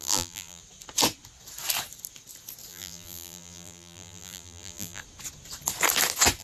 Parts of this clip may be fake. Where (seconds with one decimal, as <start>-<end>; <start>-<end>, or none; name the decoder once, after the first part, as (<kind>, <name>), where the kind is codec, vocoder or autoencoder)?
0.0-0.6 (vocoder, BigVGAN v2); 2.7-5.0